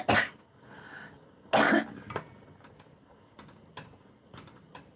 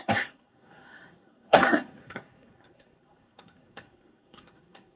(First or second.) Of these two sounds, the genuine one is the first